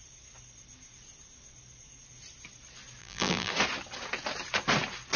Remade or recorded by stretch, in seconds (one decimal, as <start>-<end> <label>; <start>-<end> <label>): 0.0-3.0 recorded; 3.0-3.5 remade; 3.5-5.2 recorded